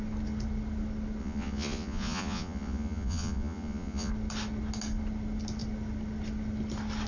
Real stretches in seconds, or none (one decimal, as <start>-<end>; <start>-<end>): 0.0-1.2; 4.1-7.1